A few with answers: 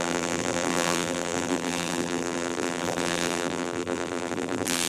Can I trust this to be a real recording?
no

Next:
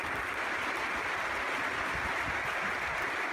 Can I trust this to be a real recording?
yes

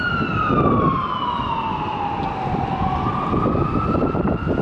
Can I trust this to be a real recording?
yes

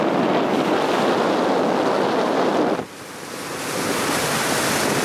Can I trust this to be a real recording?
yes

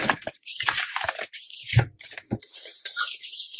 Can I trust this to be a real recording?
no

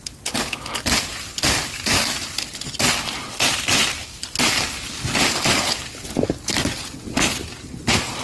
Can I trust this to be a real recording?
yes